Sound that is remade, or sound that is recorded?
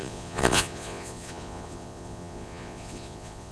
remade